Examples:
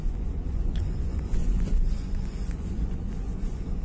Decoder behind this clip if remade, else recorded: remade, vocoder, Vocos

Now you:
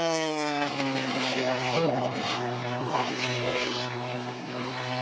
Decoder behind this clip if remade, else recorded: remade, codec, SNAC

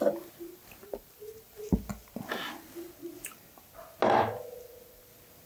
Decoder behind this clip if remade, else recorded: recorded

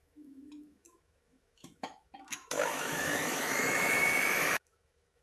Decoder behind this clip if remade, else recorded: remade, autoencoder, DAC-VAE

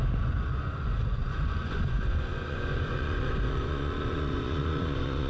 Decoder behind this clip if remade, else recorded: remade, vocoder, Vocos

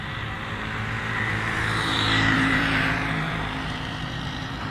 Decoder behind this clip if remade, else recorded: remade, vocoder, BigVGAN v2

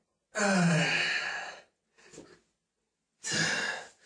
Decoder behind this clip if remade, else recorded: recorded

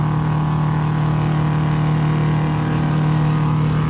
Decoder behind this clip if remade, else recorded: recorded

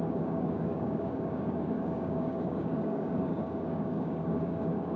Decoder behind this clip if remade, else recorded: remade, codec, DAC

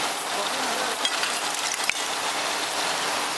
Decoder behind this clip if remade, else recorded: recorded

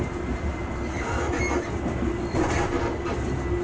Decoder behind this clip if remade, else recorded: recorded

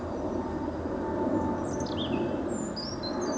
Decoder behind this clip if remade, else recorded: recorded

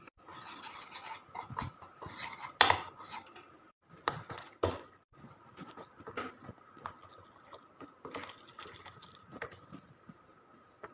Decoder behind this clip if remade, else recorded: recorded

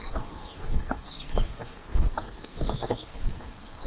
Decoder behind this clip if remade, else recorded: remade, codec, SNAC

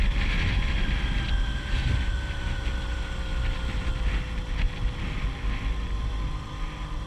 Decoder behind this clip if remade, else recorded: recorded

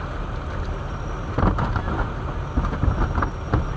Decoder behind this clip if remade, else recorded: recorded